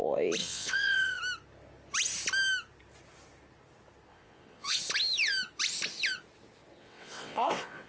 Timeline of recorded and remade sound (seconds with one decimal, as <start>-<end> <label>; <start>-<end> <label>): 0.0-0.4 recorded; 0.4-1.2 remade; 1.2-4.1 recorded; 4.1-4.8 remade; 4.8-6.8 recorded; 6.8-7.9 remade